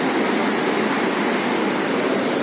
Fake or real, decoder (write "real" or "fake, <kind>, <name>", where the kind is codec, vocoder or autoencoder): fake, vocoder, BigVGAN v2